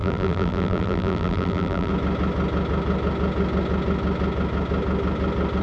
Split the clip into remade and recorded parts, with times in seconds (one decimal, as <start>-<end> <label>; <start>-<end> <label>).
0.0-1.9 remade; 1.9-5.6 recorded